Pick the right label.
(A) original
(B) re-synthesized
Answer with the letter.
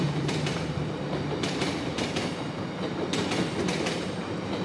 B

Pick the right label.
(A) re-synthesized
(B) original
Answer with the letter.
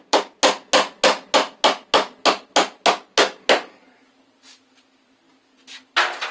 B